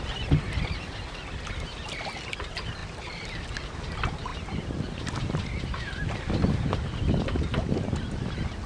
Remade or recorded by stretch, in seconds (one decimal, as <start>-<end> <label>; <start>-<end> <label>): 0.0-8.7 recorded